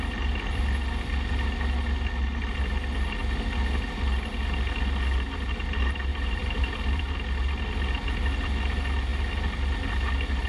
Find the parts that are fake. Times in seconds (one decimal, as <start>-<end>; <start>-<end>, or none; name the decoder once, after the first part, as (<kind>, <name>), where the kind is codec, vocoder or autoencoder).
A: 6.1-7.1 (vocoder, BigVGAN v2)